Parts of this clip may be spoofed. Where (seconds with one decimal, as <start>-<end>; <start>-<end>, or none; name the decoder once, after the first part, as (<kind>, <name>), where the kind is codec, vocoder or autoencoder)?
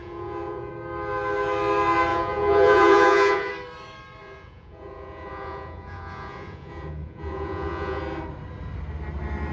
0.0-0.7 (vocoder, Vocos); 2.1-3.5; 4.2-8.0